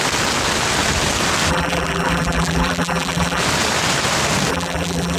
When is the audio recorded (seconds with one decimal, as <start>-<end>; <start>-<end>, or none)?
0.0-1.5; 3.4-4.5